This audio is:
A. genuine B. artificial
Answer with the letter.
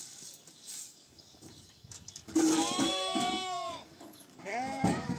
B